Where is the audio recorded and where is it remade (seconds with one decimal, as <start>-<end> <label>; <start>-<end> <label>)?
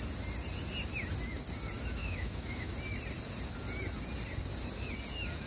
0.0-2.0 recorded; 2.0-2.7 remade; 2.7-5.5 recorded